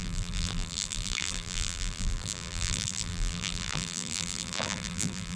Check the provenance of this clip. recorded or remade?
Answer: remade